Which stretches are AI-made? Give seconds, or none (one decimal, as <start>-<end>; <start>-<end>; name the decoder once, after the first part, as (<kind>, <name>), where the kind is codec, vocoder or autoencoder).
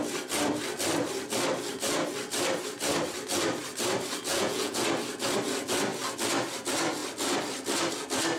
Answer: 4.3-4.8 (vocoder, Vocos)